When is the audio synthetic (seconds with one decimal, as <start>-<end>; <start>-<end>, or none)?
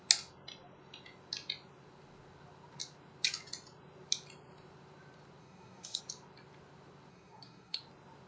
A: 5.4-6.0; 7.1-7.8